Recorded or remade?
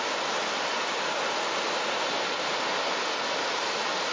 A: recorded